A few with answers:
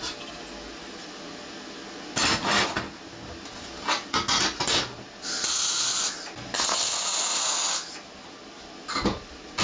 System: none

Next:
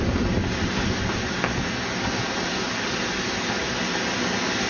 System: none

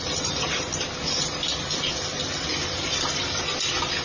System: none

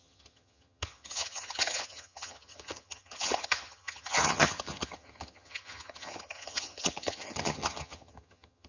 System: vocoder, HiFi-GAN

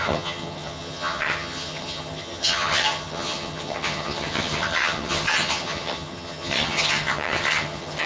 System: vocoder, HiFi-GAN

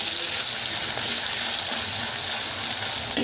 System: none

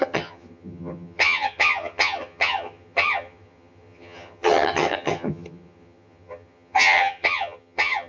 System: vocoder, HiFi-GAN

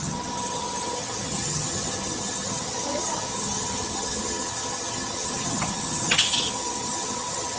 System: vocoder, HiFi-GAN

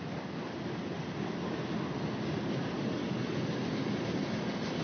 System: none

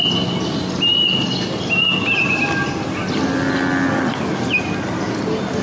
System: none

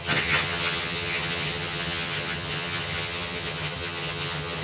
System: vocoder, HiFi-GAN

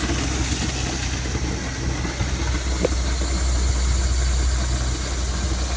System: none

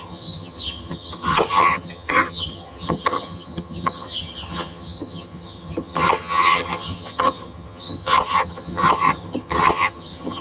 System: vocoder, HiFi-GAN